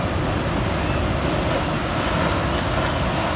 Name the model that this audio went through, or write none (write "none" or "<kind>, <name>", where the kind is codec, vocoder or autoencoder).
none